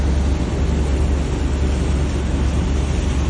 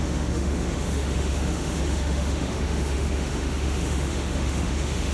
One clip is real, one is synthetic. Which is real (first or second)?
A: first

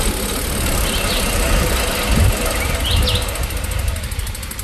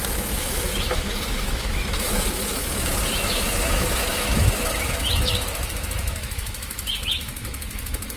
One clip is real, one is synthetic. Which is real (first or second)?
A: first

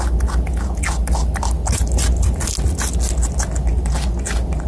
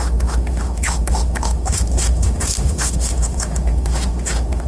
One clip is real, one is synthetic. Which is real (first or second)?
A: first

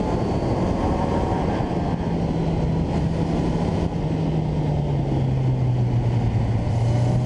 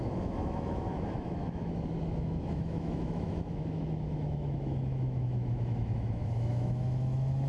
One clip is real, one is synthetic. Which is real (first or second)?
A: first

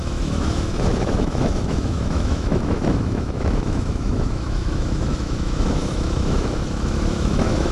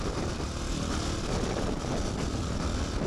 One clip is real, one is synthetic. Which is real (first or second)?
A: second